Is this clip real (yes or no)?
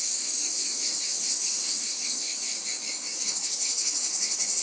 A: no